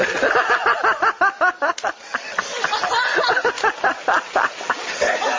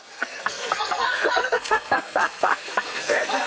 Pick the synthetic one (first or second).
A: second